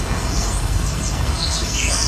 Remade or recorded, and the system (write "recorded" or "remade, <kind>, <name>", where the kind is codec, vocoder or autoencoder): remade, codec, SNAC